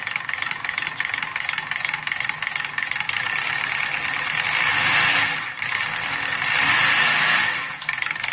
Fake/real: real